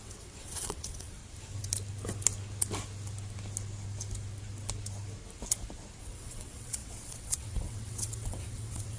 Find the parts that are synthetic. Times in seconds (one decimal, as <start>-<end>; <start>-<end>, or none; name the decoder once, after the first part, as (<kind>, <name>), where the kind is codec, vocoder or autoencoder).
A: 0.0-1.2 (vocoder, WaveNeXt); 6.0-9.0